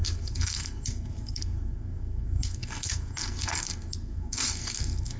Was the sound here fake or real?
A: fake